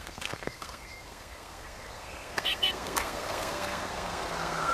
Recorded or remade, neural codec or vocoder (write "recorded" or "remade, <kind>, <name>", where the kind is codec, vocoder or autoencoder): remade, codec, SNAC